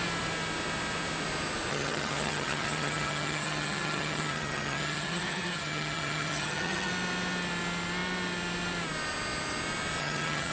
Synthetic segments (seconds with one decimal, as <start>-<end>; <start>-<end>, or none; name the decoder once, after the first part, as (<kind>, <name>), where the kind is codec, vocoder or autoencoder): 1.7-6.9 (vocoder, HiFi-GAN); 10.0-10.5